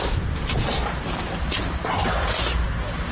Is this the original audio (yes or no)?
no